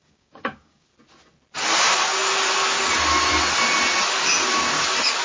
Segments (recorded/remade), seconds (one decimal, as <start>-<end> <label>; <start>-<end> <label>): 0.0-0.9 remade; 0.9-5.2 recorded